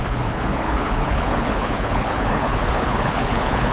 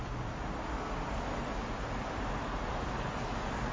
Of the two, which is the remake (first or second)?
first